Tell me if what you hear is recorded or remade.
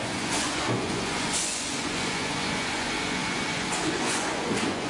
remade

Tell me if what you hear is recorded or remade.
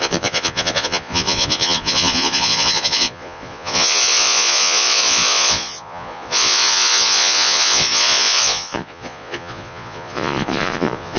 remade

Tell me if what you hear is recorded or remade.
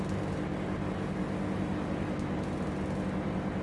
recorded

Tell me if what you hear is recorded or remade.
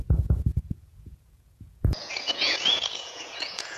remade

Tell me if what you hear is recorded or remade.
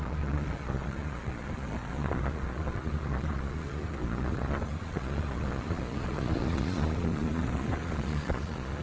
remade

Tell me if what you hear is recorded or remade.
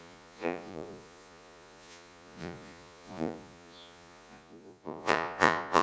remade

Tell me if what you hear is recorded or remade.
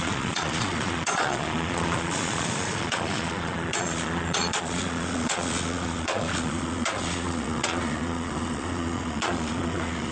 remade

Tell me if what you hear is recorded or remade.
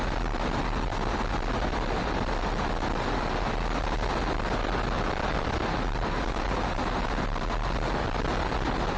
recorded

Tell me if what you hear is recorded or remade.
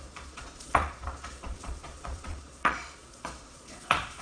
remade